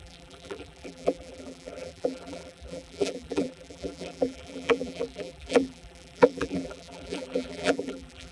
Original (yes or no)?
no